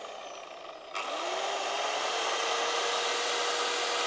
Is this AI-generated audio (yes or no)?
no